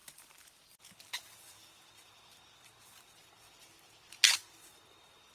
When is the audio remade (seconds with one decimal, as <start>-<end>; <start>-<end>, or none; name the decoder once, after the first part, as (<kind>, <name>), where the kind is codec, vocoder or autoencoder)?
none